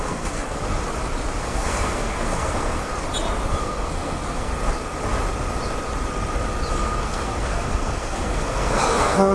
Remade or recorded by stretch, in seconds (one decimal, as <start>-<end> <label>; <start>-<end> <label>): 0.0-0.6 remade; 0.6-1.4 recorded; 1.4-2.9 remade; 2.9-3.5 recorded; 3.5-4.5 remade; 4.5-6.7 recorded; 6.7-9.3 remade